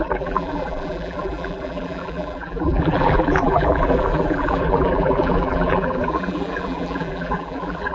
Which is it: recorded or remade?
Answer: remade